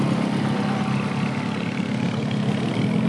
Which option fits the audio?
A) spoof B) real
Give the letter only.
B